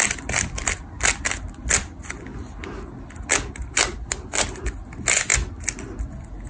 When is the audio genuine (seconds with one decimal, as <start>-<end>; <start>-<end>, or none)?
0.0-6.5